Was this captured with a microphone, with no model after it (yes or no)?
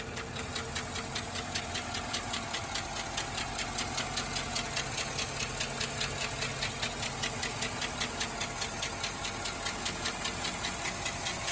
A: yes